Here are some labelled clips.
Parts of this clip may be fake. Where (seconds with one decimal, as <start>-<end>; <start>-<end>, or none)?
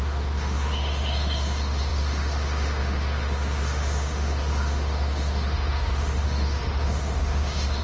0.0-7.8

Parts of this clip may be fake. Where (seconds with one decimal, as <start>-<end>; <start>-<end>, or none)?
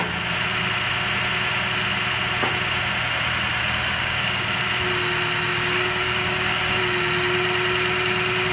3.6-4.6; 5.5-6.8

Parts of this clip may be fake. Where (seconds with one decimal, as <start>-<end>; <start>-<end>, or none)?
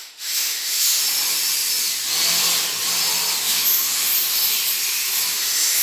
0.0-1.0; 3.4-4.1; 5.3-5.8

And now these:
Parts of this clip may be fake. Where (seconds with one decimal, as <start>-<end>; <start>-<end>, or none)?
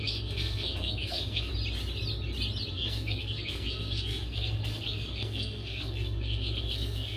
0.0-1.5; 2.7-7.2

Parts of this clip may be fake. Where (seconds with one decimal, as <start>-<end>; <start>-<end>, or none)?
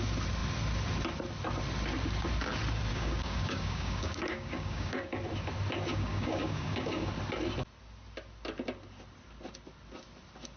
2.9-5.2; 5.9-7.1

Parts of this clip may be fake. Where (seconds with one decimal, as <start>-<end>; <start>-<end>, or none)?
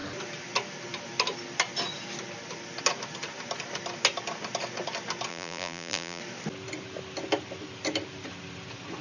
5.3-6.2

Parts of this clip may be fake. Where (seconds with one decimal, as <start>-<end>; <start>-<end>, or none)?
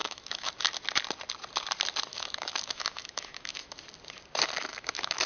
0.0-0.5; 2.1-3.8; 4.7-5.3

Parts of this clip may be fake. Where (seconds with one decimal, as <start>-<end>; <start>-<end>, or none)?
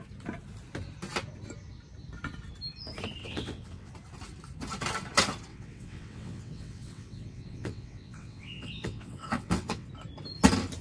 3.2-3.9; 5.5-9.9